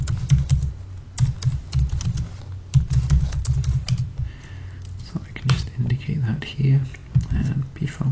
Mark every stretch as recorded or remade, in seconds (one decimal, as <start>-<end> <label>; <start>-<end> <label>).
0.0-8.1 recorded